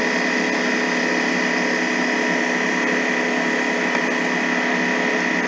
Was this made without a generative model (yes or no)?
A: yes